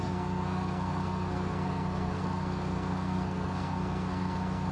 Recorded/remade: remade